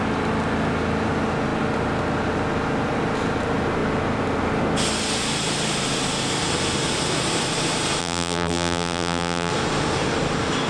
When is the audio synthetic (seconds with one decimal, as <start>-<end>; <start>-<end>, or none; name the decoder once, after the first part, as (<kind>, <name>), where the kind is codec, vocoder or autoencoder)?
8.0-9.5 (vocoder, BigVGAN v2)